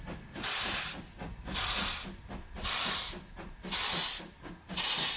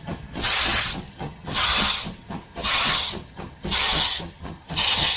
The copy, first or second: second